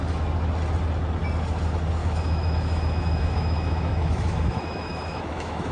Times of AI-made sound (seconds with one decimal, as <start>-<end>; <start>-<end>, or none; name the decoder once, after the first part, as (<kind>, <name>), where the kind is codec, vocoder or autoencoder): 2.0-5.7 (autoencoder, DAC-VAE)